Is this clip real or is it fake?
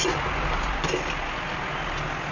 real